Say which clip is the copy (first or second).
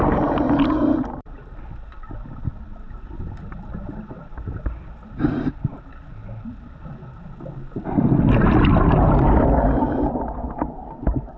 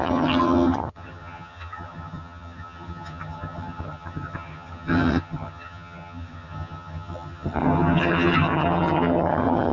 second